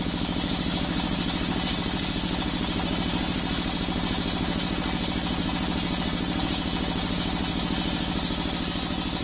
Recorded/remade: recorded